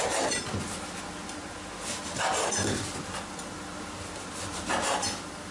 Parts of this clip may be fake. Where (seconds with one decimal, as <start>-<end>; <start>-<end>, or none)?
none